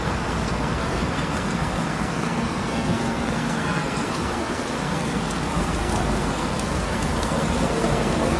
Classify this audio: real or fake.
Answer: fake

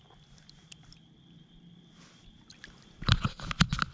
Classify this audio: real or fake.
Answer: real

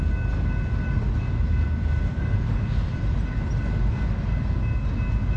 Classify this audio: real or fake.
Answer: real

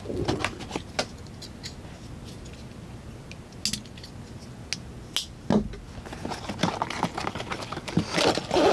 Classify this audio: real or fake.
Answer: real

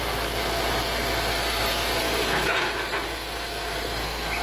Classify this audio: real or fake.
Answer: real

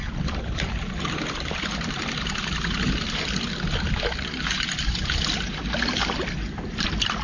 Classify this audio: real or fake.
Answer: real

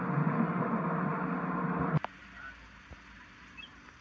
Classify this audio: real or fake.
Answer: real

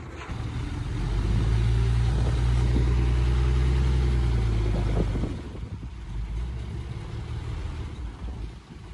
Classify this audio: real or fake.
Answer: real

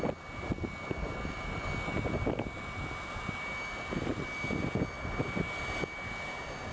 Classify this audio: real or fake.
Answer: real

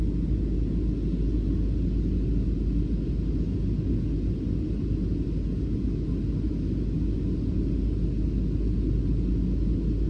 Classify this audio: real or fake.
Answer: real